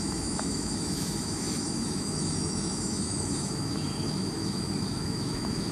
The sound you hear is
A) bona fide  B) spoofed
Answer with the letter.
B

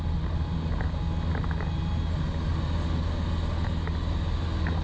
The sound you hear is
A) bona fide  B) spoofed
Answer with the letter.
A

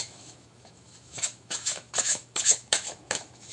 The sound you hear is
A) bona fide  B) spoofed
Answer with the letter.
B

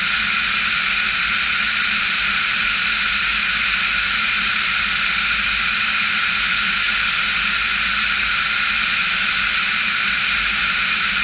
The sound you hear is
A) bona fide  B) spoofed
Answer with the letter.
A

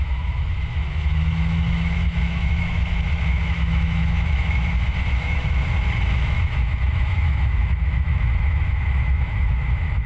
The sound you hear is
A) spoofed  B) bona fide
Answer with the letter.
A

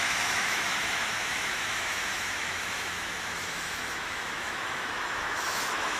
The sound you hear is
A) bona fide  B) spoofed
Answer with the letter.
B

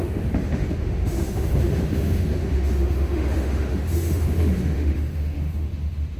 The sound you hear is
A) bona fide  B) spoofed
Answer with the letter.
B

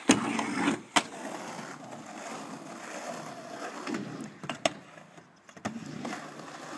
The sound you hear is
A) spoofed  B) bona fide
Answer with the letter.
B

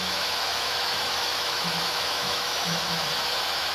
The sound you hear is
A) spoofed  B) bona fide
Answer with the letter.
A